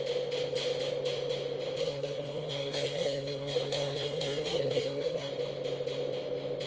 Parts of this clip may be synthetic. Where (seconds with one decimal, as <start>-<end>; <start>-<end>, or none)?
1.8-5.3